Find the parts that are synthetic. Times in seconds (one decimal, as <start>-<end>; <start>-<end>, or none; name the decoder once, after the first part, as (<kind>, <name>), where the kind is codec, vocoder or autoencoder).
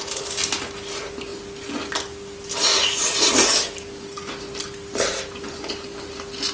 none